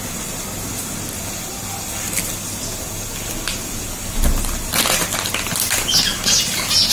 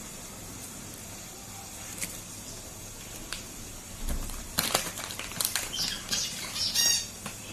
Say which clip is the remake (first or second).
second